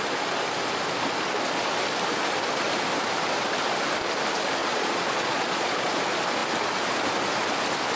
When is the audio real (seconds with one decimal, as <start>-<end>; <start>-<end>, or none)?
0.0-4.6; 6.0-8.0